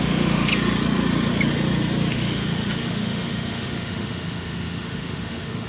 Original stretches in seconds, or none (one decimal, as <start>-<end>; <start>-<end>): 0.5-2.1